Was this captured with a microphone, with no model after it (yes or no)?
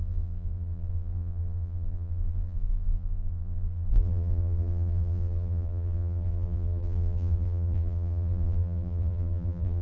no